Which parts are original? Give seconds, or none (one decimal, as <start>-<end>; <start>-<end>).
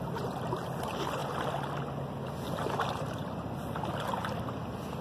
0.0-1.2; 4.0-5.0